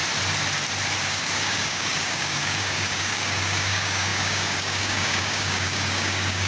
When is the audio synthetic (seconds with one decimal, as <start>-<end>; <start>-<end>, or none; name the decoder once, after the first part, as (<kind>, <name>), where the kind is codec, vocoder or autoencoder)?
1.0-6.5 (codec, DAC)